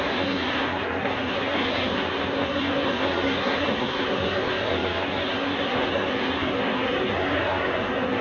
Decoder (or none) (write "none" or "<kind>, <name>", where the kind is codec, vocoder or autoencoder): codec, SNAC